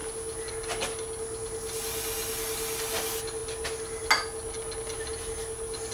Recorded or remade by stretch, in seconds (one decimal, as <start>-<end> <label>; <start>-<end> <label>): 0.0-5.9 recorded